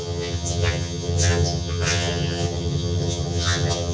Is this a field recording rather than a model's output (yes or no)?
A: no